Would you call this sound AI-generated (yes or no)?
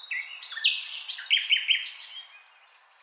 no